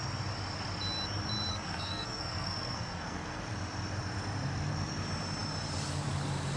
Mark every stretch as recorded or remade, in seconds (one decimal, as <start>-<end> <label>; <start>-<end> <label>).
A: 0.0-1.5 recorded; 1.5-3.4 remade; 3.4-6.6 recorded